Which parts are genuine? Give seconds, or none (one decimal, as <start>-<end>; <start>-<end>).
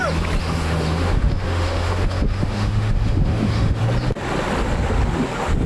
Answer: 0.0-0.4; 3.8-5.7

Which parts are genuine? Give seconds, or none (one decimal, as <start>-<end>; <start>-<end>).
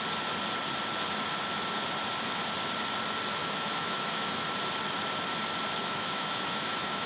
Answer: 0.0-3.4; 4.4-5.8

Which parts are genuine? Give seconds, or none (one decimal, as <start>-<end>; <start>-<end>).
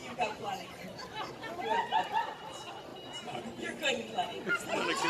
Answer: 0.0-5.1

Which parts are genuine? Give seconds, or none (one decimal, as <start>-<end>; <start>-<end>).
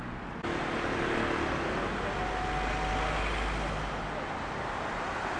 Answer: 0.0-5.4